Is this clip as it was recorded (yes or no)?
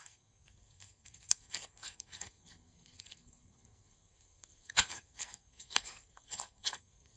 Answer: no